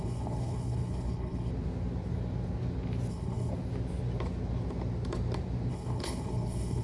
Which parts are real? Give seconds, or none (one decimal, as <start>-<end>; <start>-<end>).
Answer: 1.5-3.1; 3.5-5.7